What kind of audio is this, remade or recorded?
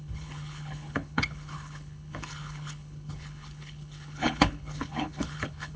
remade